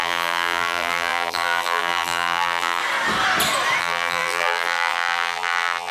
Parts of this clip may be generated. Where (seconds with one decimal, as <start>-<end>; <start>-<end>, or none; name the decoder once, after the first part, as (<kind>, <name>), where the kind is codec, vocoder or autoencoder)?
0.0-2.8 (vocoder, BigVGAN v2); 3.8-5.9